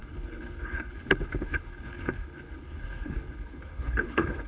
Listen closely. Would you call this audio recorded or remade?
remade